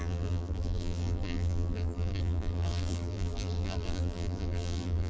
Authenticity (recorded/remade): remade